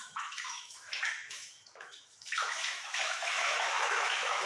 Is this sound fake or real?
fake